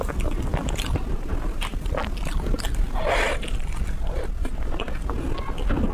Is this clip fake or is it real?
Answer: real